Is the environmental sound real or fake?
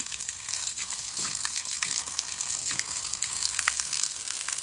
fake